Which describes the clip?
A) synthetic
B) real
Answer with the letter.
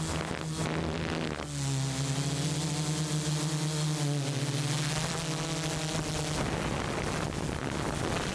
B